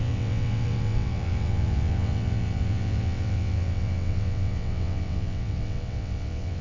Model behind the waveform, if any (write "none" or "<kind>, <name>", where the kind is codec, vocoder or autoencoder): vocoder, WaveNeXt